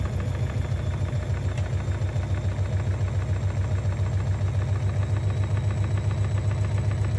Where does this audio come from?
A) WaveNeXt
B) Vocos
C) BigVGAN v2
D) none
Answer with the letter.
D